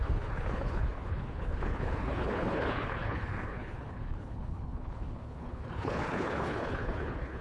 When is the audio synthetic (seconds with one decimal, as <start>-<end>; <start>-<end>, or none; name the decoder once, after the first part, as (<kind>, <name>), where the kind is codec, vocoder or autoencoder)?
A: 0.0-7.4 (codec, HILCodec)